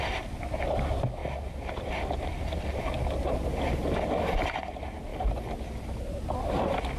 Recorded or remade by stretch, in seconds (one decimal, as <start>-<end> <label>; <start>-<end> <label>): 0.0-1.2 remade; 1.2-1.7 recorded; 1.7-2.7 remade; 2.7-3.8 recorded; 3.8-5.1 remade; 5.1-5.7 recorded; 5.7-7.0 remade